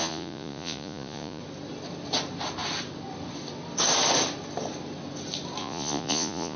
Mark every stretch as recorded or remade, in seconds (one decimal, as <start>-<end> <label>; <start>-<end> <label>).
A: 0.0-1.4 remade; 1.4-5.6 recorded; 5.6-6.6 remade